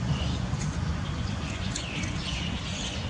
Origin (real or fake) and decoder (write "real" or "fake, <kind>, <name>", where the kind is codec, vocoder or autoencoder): fake, vocoder, Vocos